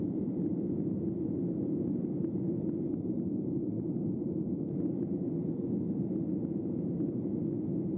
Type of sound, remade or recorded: recorded